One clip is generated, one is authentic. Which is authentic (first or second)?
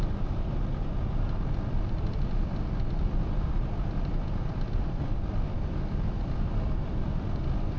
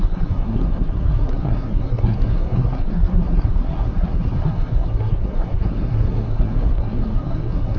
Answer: first